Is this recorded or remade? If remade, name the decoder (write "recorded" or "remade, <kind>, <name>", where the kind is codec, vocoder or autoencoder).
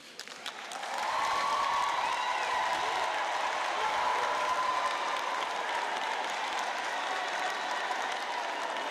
remade, vocoder, BigVGAN v2